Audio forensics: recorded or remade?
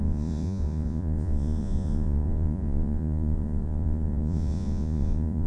remade